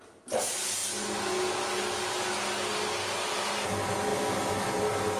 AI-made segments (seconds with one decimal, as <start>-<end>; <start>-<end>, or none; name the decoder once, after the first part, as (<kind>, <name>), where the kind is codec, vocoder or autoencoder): none